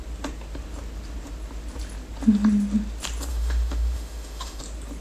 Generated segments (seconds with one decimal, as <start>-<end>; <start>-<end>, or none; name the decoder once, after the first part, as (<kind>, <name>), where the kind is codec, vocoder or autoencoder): 3.3-4.6 (autoencoder, DAC-VAE)